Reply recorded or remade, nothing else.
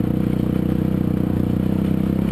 recorded